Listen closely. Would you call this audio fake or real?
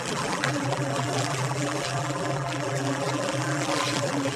fake